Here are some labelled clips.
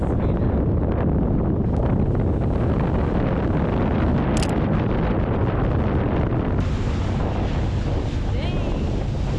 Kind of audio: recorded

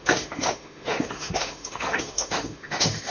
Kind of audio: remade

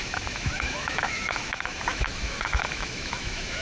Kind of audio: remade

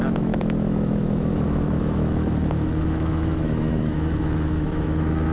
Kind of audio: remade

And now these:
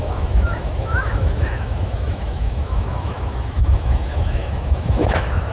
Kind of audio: remade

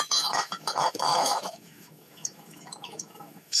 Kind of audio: remade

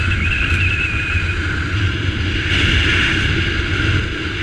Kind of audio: recorded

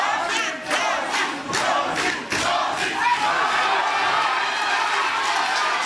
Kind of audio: recorded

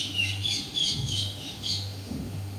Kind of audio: remade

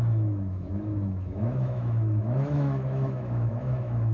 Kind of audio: remade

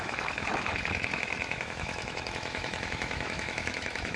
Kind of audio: remade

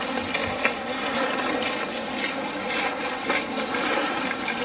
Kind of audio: recorded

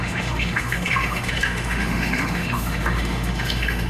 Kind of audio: remade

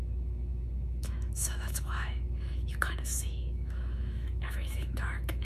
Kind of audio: remade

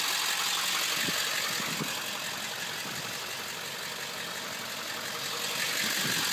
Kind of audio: recorded